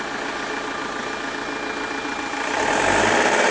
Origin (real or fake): real